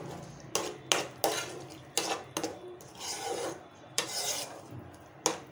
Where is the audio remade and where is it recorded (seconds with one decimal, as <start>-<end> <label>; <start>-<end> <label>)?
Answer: 0.0-2.5 recorded; 2.5-4.6 remade; 4.6-5.5 recorded